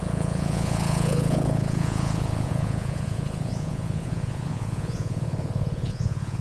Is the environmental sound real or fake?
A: fake